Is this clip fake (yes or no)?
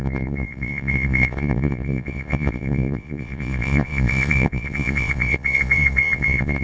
yes